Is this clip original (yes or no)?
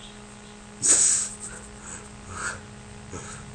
yes